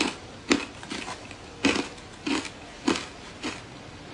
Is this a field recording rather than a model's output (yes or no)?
yes